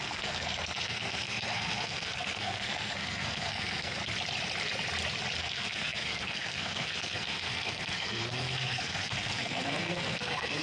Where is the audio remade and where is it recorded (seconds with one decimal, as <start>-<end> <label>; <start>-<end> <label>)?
0.0-4.0 remade; 4.0-5.4 recorded; 5.4-10.6 remade

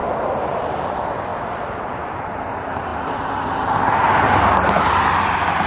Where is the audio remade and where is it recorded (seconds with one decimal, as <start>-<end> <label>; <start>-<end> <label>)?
0.0-2.9 remade; 2.9-5.7 recorded

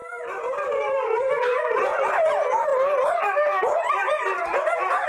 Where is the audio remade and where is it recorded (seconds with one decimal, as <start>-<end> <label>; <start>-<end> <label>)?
0.0-2.7 remade; 2.7-4.6 recorded; 4.6-5.1 remade

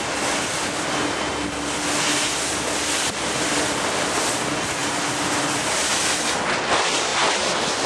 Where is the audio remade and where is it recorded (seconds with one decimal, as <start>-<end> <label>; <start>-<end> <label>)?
0.0-7.9 recorded

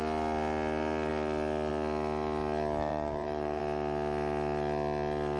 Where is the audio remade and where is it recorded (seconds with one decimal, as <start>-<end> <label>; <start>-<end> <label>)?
0.0-2.9 recorded; 2.9-3.6 remade; 3.6-5.4 recorded

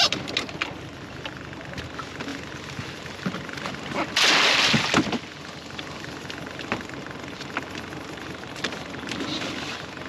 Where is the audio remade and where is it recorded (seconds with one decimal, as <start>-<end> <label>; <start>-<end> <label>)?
0.0-10.1 recorded